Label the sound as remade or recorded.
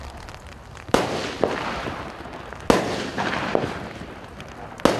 recorded